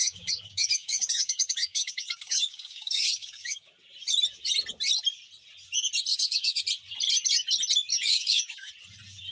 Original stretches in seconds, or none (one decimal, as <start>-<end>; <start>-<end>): 3.7-6.1; 6.6-7.9; 8.7-9.3